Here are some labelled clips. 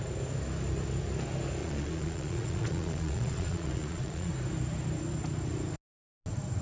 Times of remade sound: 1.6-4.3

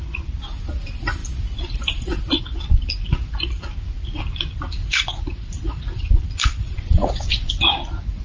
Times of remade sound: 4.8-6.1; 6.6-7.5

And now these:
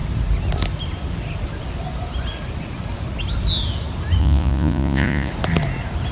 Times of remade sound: 4.2-5.3

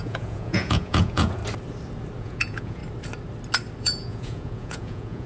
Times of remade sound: 0.0-1.4; 2.2-2.8; 3.8-5.3